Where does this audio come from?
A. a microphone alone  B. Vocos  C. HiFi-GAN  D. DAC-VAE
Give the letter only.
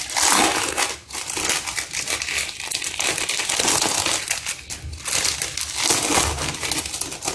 A